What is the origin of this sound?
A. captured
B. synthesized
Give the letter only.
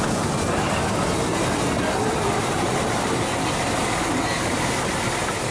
A